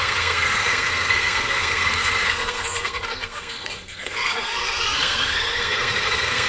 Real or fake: fake